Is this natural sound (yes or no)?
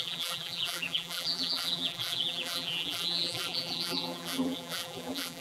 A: no